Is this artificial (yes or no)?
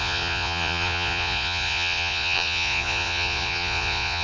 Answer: yes